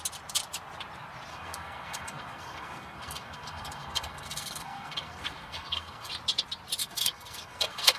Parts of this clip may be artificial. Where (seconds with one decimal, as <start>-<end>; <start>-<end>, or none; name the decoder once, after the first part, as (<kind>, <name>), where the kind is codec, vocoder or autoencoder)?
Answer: 1.3-6.1 (codec, SNAC); 6.8-8.0